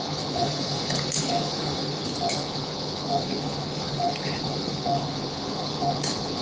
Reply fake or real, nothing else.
fake